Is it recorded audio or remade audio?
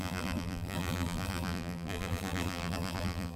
remade